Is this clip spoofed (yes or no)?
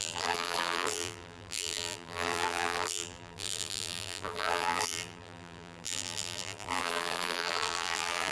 yes